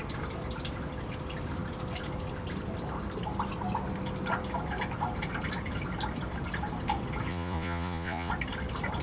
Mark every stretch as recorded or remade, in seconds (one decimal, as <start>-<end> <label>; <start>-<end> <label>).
0.0-7.3 recorded; 7.3-8.3 remade; 8.3-9.0 recorded